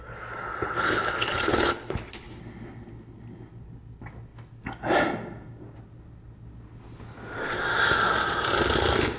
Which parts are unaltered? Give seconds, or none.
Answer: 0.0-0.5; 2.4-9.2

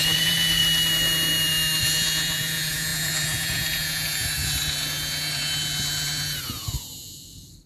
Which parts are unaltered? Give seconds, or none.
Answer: 0.6-1.8

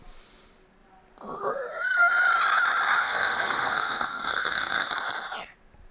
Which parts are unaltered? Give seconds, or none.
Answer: 0.0-3.0; 4.9-5.9

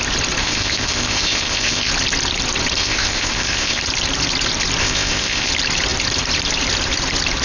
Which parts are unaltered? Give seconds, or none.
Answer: 0.0-0.4; 1.9-2.8; 3.8-4.8; 5.5-7.4

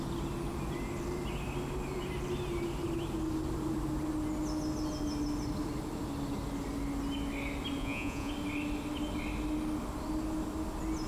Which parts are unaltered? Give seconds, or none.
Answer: 0.0-7.8; 8.3-11.1

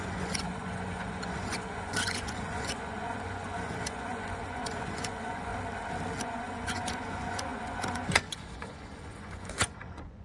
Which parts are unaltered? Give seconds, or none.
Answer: 5.5-6.2

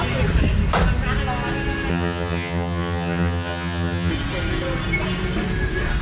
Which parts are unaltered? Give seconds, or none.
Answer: 0.0-1.9; 4.1-6.0

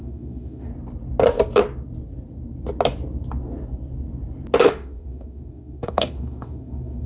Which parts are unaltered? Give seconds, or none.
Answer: 0.7-4.6